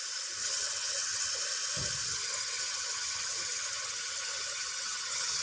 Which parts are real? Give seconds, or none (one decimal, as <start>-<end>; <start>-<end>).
0.0-0.4; 1.4-2.0